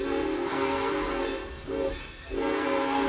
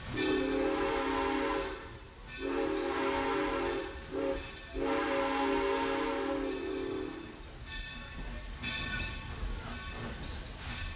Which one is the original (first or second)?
second